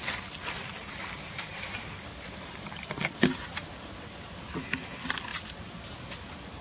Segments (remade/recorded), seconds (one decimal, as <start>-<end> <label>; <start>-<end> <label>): 0.0-0.8 recorded; 0.8-3.0 remade; 3.0-5.3 recorded; 5.3-6.1 remade; 6.1-6.6 recorded